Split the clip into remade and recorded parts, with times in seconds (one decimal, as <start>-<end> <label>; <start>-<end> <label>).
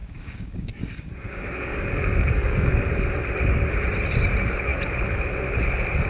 0.0-2.7 remade; 2.7-6.1 recorded